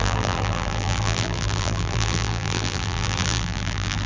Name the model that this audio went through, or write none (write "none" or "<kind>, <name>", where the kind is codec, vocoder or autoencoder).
vocoder, BigVGAN v2